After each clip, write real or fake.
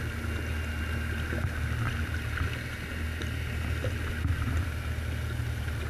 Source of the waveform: real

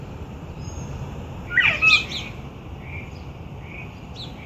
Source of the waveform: fake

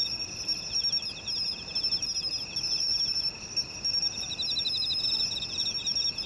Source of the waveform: real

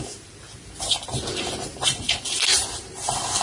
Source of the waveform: fake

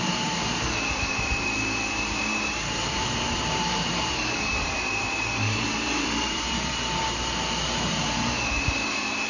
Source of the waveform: fake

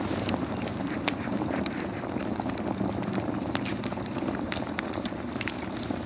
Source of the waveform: fake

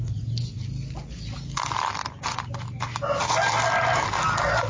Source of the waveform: real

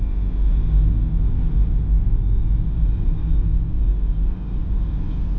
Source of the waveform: real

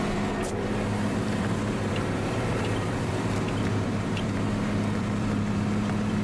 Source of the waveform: fake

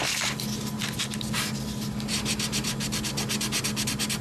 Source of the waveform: real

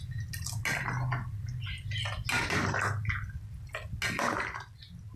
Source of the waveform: real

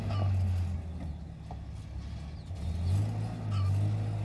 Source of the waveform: real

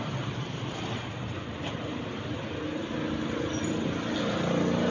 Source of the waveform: real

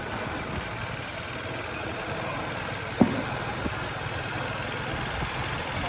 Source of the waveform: real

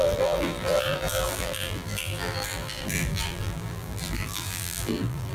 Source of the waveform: fake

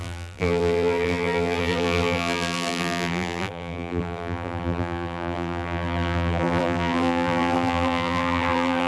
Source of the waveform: fake